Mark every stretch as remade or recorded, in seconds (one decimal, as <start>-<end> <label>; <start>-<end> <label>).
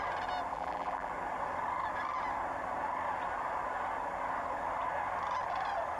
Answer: 0.0-0.5 recorded; 0.5-1.1 remade; 1.1-6.0 recorded